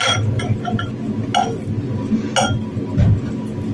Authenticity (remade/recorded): recorded